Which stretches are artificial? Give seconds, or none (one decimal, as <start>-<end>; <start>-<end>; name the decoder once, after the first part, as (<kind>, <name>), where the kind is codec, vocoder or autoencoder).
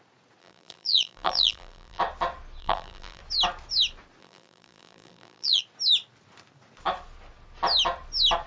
0.4-2.0 (vocoder, BigVGAN v2); 2.6-3.2; 4.2-5.6